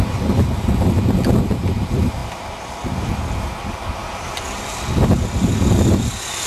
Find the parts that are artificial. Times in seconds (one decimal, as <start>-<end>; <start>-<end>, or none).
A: none